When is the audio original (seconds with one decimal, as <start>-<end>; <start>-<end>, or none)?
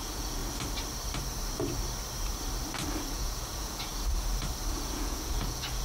0.4-3.0; 3.9-4.7